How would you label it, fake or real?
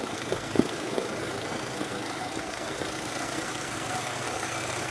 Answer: fake